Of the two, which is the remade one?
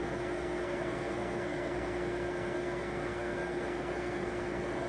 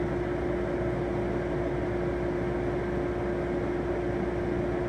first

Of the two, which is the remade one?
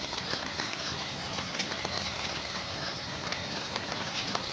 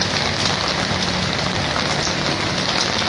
first